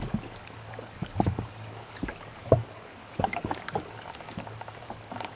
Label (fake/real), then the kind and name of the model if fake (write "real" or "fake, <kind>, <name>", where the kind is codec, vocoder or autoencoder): fake, codec, DAC